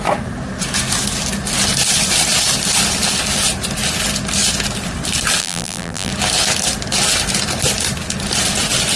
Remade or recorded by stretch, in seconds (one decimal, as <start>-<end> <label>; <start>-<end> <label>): 0.0-5.4 recorded; 5.4-6.1 remade; 6.1-9.0 recorded